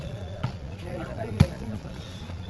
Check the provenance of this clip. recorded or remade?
remade